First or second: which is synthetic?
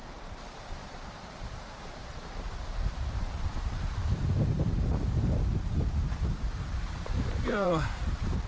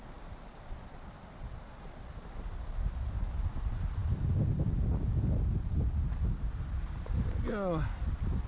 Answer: first